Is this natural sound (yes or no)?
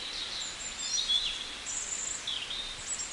yes